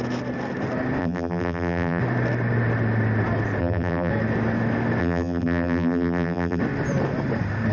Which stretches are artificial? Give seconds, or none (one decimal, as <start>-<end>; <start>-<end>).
1.0-2.0; 3.6-4.1; 5.0-6.6